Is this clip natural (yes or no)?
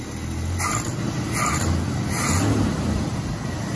yes